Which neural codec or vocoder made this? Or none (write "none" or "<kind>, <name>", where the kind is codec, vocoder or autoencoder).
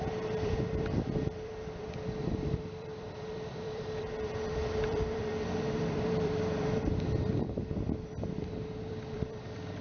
vocoder, BigVGAN v2